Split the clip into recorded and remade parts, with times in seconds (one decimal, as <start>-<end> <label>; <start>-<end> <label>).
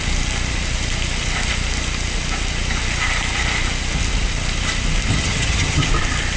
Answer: 0.0-5.1 recorded; 5.1-5.9 remade; 5.9-6.4 recorded